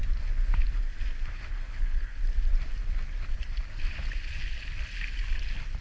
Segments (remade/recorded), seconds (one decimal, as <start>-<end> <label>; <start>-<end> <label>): 0.0-1.5 recorded; 1.5-2.2 remade; 2.2-5.8 recorded